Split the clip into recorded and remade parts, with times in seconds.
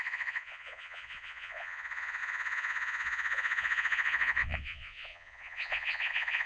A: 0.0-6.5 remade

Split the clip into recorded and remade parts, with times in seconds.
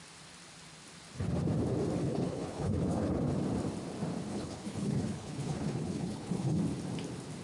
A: 0.0-2.0 recorded; 2.0-3.1 remade; 3.1-4.3 recorded; 4.3-6.6 remade; 6.6-7.4 recorded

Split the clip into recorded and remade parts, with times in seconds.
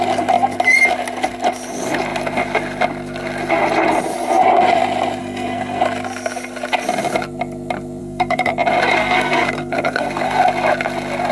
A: 0.0-5.2 recorded; 5.2-5.8 remade; 5.8-8.0 recorded; 8.0-8.5 remade; 8.5-9.0 recorded; 9.0-10.4 remade; 10.4-11.3 recorded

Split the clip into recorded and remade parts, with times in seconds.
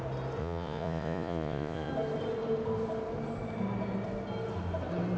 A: 0.0-0.4 recorded; 0.4-1.9 remade; 1.9-5.2 recorded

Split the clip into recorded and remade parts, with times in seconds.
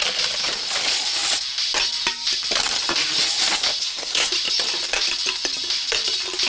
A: 0.0-3.8 recorded; 3.8-4.3 remade; 4.3-6.5 recorded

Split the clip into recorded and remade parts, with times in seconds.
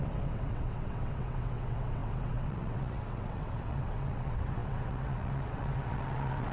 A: 0.0-6.5 remade